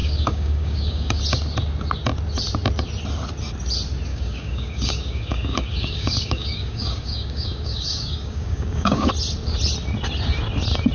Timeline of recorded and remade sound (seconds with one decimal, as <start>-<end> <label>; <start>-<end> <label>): 0.0-1.2 remade; 1.2-4.1 recorded; 4.1-9.1 remade; 9.1-10.9 recorded